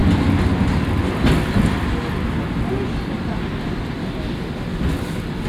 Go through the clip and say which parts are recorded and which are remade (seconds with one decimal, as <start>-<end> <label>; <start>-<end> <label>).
0.0-5.5 recorded